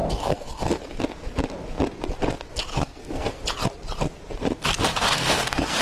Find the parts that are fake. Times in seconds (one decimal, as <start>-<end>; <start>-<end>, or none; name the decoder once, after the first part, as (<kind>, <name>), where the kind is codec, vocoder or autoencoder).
0.0-1.0 (codec, SNAC); 2.7-3.4; 5.0-5.8